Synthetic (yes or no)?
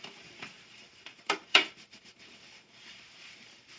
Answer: yes